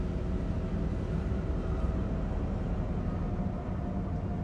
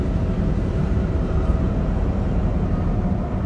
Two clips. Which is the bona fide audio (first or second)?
first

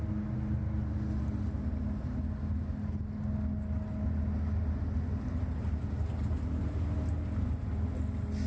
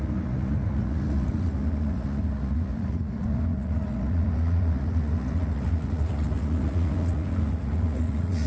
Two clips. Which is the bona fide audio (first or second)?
first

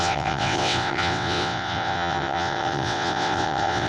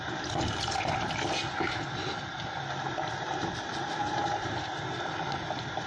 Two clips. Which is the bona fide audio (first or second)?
second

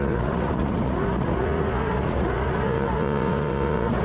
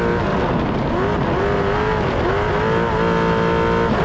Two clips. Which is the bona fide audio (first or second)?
second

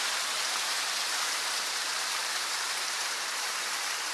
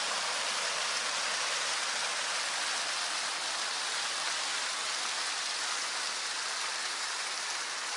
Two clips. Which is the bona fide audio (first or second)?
second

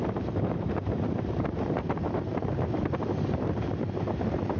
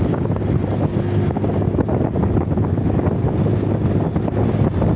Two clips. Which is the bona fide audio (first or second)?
second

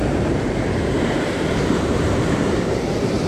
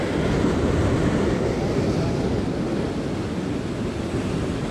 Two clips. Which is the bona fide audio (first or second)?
second